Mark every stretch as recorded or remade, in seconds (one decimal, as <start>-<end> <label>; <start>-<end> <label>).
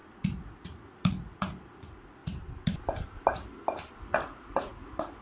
0.0-2.2 remade; 2.2-4.0 recorded; 4.0-5.2 remade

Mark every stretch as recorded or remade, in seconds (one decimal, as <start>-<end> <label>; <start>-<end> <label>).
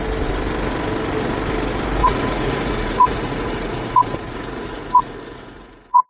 0.0-2.0 recorded; 2.0-6.1 remade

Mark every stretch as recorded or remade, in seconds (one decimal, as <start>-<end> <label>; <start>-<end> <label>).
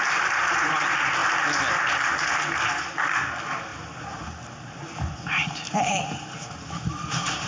0.0-7.5 recorded